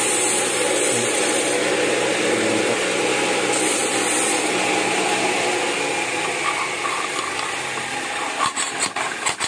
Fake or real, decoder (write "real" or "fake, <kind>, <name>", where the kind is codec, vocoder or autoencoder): real